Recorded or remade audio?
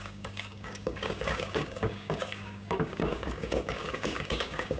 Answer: remade